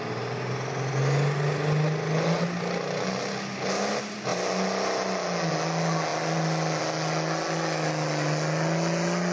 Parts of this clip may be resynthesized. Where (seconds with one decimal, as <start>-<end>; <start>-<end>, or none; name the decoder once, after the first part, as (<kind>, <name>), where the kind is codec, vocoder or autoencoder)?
6.1-6.8 (vocoder, BigVGAN v2)